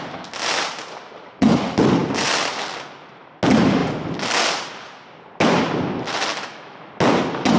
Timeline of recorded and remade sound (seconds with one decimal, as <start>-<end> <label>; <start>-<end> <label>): 0.0-6.3 recorded; 6.3-6.9 remade; 6.9-7.6 recorded